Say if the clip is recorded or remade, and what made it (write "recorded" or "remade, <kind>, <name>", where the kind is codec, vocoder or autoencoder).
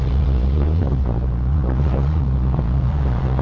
remade, vocoder, Vocos